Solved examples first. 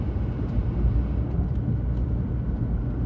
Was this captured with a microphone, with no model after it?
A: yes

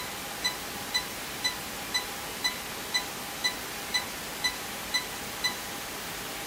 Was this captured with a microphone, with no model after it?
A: yes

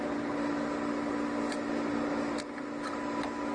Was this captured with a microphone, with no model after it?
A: yes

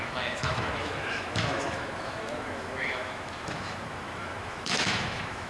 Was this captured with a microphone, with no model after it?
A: no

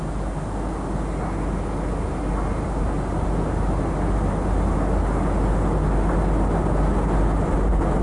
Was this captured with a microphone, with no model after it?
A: yes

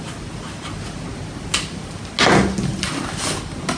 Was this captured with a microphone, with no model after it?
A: yes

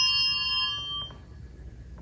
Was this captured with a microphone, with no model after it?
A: yes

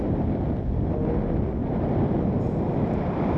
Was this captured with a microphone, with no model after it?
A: yes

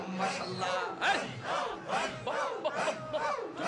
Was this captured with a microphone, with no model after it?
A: yes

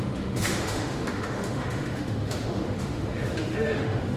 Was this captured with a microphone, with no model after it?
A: no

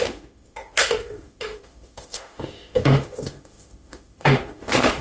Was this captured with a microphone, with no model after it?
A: no